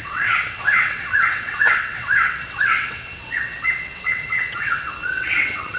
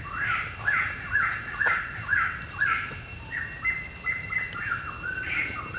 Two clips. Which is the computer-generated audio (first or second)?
first